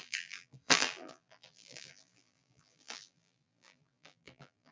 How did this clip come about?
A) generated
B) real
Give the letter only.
A